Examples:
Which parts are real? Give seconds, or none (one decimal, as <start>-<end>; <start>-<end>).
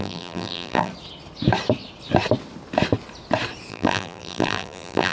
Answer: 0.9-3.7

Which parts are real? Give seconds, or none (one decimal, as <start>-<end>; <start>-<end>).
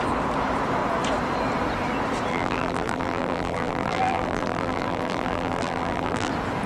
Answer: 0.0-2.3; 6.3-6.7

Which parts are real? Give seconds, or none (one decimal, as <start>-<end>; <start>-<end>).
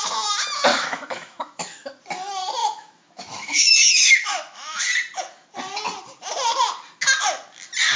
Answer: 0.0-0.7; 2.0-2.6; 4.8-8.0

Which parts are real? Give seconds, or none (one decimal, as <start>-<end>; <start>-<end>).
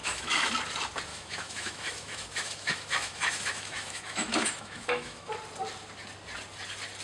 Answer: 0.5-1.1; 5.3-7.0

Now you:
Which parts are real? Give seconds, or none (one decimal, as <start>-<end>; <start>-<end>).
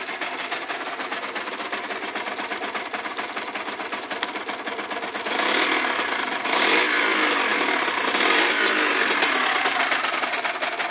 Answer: 0.0-10.9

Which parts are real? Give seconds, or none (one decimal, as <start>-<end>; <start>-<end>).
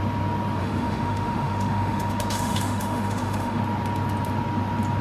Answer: 0.0-0.6; 3.6-5.0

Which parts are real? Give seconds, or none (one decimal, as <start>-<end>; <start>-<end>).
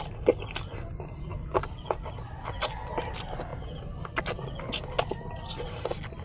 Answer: 0.0-6.2